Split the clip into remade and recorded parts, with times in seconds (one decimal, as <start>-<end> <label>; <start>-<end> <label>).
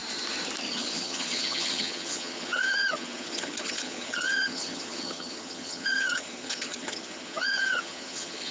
0.0-0.7 recorded; 0.7-8.5 remade